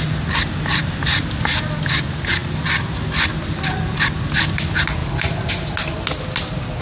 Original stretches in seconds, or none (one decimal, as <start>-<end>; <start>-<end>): 0.0-6.8